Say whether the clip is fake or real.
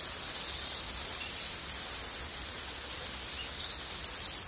real